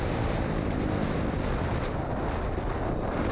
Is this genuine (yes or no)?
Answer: no